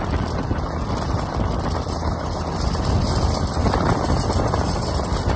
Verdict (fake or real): real